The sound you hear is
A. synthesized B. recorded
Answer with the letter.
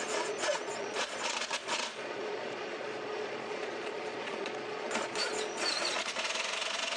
A